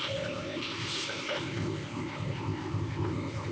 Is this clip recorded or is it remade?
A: remade